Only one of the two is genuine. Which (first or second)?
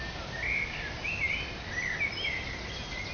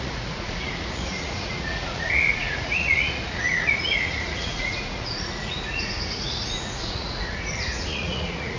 first